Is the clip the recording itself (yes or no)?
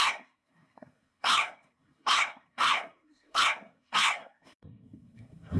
no